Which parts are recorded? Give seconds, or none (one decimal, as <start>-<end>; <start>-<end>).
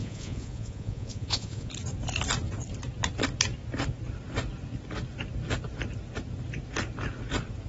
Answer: 1.7-7.7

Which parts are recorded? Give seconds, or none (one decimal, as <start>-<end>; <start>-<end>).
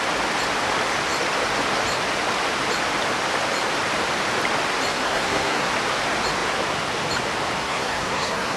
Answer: 0.0-4.9; 5.7-7.6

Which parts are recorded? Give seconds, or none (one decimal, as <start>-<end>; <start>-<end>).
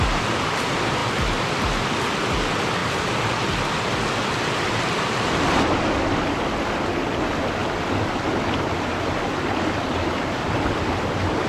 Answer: 0.0-11.5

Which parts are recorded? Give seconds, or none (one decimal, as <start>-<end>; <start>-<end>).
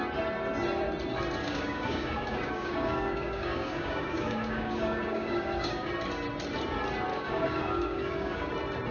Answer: 0.0-1.4; 5.9-7.1; 8.5-8.9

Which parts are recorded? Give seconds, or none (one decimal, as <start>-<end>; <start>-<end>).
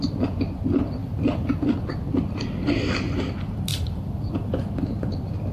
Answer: 0.0-1.0; 1.6-3.7; 4.6-5.5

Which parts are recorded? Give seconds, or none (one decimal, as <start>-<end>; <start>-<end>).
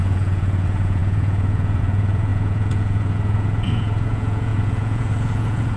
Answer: none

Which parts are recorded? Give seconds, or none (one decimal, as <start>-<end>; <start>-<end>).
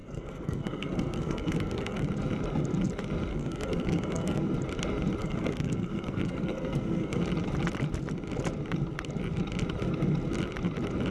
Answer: 2.1-3.3; 4.4-5.2; 7.2-11.1